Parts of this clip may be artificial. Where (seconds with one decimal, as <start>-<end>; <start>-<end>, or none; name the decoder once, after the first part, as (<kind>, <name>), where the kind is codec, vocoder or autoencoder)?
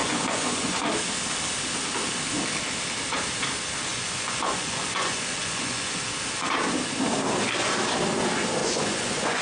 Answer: 0.0-0.9 (vocoder, Vocos); 3.9-6.0; 8.6-9.4